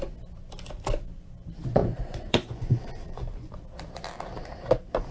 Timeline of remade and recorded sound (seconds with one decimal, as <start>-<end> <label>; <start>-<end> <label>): 0.0-1.8 recorded; 1.8-3.5 remade; 3.5-5.1 recorded